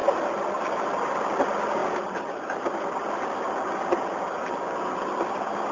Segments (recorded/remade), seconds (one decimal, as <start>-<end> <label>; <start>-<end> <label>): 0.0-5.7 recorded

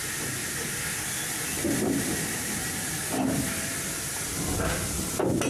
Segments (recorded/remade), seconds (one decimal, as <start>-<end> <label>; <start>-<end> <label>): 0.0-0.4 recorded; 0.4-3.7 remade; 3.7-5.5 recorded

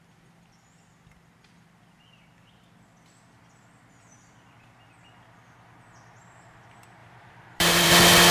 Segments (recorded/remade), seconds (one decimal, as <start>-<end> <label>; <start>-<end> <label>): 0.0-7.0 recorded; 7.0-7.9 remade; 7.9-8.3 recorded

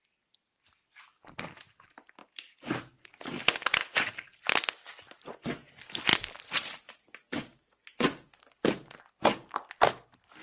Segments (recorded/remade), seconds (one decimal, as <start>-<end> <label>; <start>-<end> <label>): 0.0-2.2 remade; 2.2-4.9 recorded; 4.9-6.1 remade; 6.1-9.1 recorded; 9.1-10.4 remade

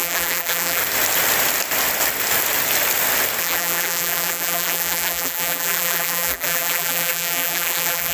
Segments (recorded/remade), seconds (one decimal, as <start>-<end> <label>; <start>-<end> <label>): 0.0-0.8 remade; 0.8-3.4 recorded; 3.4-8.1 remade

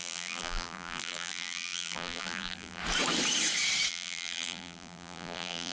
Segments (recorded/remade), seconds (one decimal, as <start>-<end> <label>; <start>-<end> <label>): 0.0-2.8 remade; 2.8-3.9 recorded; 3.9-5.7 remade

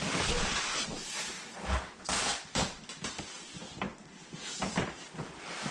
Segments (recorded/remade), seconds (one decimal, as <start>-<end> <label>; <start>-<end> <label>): 0.0-0.9 remade; 0.9-1.5 recorded; 1.5-2.3 remade; 2.3-3.6 recorded; 3.6-5.7 remade

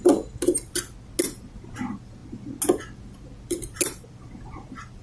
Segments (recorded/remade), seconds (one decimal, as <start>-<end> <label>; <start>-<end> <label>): 0.0-5.0 recorded